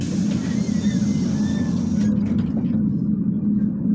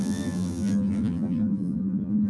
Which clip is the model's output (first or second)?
second